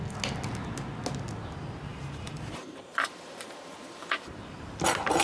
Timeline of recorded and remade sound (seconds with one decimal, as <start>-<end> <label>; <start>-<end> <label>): 0.0-1.9 recorded; 1.9-4.6 remade; 4.6-5.2 recorded